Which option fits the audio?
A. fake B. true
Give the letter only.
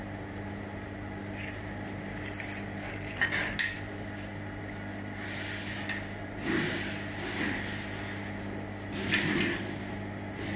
B